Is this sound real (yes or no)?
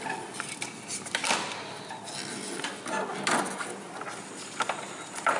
yes